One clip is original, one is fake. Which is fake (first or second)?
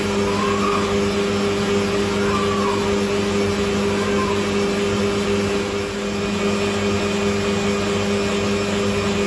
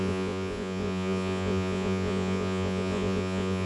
second